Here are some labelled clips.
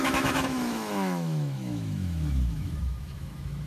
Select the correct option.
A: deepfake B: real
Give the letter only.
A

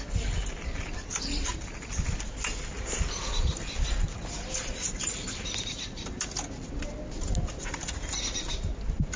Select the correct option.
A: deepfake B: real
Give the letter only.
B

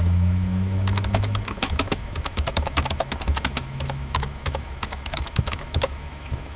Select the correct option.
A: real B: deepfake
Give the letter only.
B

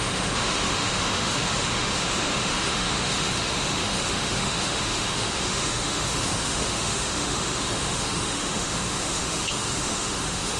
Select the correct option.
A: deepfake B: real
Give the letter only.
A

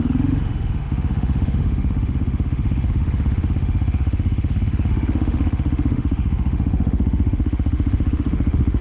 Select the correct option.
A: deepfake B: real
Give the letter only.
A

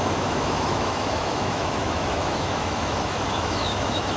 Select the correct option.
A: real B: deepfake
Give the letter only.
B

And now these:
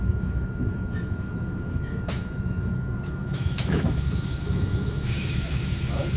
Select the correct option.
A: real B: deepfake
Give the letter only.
B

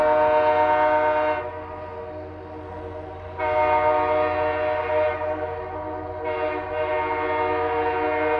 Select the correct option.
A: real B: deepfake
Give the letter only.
A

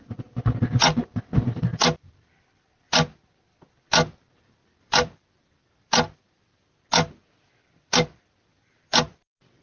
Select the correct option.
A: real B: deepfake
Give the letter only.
A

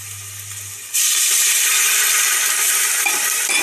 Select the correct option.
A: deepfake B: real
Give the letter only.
B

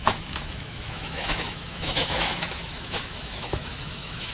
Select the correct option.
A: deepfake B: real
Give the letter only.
A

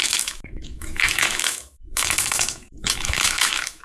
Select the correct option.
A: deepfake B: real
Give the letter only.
A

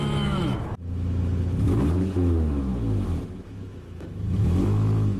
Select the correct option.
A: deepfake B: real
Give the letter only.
A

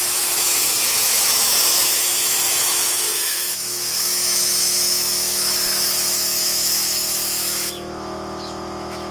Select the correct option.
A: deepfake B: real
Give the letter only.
A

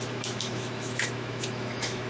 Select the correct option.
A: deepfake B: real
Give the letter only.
A